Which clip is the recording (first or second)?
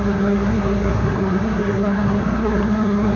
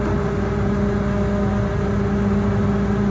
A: second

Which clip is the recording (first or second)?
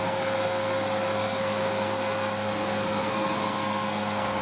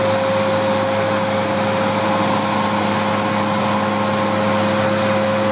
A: second